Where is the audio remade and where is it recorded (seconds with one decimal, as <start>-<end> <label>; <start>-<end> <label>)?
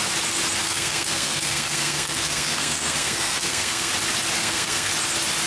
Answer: 0.0-0.6 recorded; 0.6-3.9 remade; 3.9-4.4 recorded; 4.4-4.9 remade; 4.9-5.5 recorded